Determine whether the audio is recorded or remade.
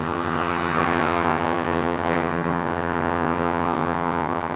remade